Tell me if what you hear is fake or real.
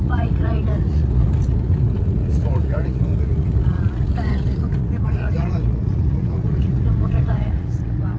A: fake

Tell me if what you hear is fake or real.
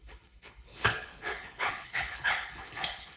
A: fake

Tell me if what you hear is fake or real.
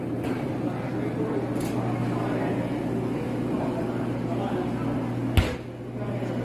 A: real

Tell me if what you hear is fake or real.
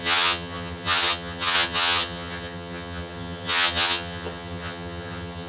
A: fake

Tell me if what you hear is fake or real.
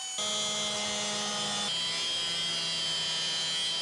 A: real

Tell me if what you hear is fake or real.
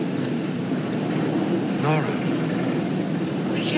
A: real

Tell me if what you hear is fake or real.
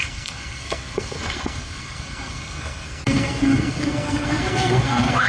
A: fake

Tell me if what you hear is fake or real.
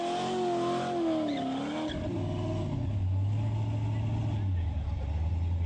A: real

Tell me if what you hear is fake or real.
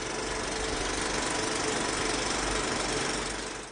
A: real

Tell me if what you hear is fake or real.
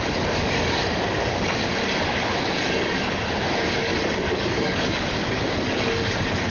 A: fake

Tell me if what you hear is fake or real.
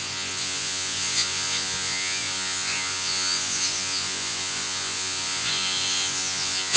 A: fake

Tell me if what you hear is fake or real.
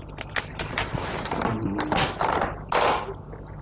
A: real